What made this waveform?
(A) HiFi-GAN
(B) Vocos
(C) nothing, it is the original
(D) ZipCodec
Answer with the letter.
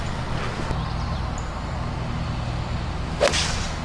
C